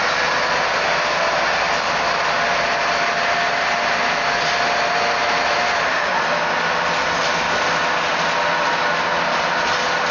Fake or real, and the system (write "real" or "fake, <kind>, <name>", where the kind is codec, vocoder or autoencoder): real